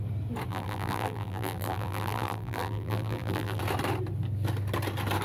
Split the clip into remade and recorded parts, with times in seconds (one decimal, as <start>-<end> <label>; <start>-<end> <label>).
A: 0.0-0.5 recorded; 0.5-3.6 remade; 3.6-5.2 recorded